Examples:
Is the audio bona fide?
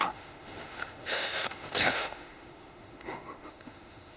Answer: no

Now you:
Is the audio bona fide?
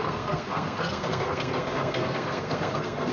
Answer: no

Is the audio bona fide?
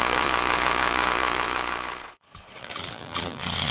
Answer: no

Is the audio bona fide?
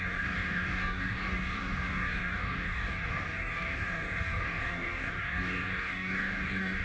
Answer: no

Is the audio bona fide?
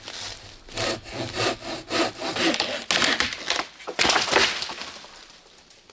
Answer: yes